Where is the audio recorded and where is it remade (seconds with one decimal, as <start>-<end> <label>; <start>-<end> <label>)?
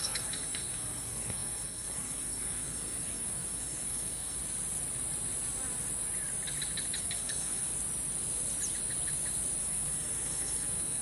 0.0-4.4 remade; 4.4-7.0 recorded; 7.0-7.7 remade; 7.7-9.6 recorded; 9.6-11.0 remade